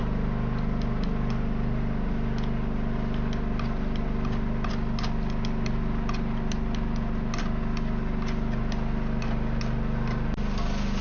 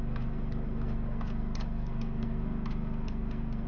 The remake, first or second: second